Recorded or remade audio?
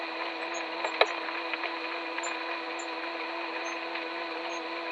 recorded